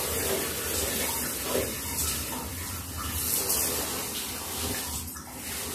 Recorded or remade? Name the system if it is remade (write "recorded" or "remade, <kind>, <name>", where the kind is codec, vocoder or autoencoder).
recorded